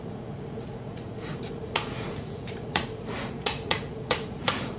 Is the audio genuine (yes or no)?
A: no